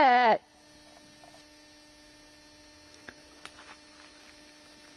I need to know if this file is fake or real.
real